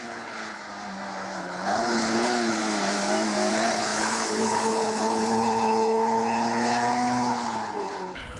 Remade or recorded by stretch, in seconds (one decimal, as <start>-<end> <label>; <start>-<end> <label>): 0.0-0.6 remade; 0.6-1.4 recorded; 1.4-2.6 remade; 2.6-3.5 recorded; 3.5-8.4 remade